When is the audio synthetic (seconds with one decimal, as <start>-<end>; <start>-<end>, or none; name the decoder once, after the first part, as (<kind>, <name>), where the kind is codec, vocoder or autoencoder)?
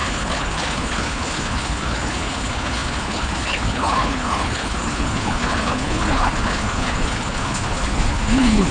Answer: 0.0-8.7 (codec, HILCodec)